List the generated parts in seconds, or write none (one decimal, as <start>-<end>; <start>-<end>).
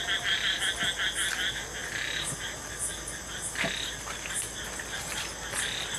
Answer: none